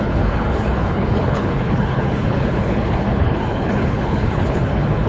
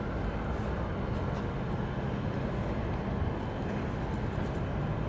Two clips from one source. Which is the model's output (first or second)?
first